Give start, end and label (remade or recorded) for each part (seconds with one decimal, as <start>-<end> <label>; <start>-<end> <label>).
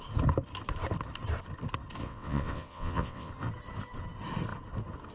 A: 0.0-2.0 recorded; 2.0-3.3 remade; 3.3-5.1 recorded